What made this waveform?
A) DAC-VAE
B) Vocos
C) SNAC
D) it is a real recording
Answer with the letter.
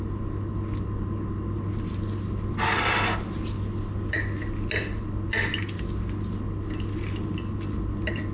D